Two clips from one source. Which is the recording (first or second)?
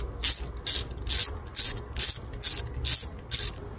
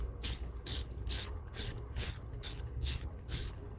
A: first